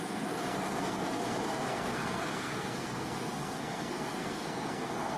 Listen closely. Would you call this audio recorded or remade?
remade